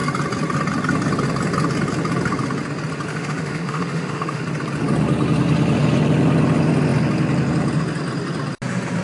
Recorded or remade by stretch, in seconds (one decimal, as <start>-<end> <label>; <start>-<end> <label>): 0.0-3.1 recorded; 3.1-4.4 remade; 4.4-9.0 recorded